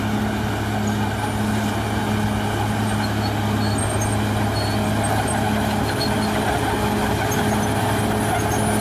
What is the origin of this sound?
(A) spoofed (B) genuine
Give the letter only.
B